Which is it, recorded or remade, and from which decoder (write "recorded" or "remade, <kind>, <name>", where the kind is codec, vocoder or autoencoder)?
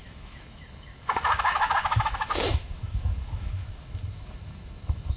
remade, autoencoder, DAC-VAE